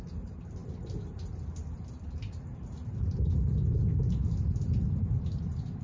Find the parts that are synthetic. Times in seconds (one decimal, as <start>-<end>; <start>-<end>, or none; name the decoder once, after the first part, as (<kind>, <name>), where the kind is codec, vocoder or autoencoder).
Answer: none